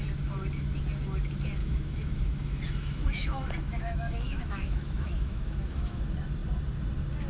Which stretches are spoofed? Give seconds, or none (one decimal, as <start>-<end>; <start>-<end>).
1.6-6.0